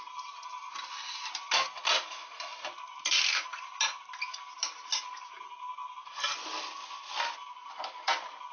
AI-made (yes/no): no